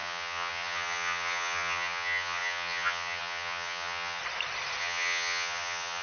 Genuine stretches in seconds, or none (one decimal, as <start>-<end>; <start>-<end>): 4.2-4.8